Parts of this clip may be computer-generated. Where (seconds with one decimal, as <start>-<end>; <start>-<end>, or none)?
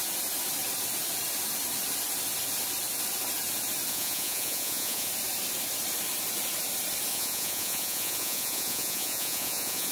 3.9-5.1; 7.1-9.9